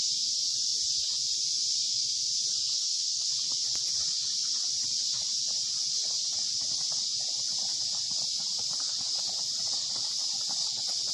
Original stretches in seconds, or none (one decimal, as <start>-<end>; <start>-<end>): 0.0-2.7; 3.3-11.1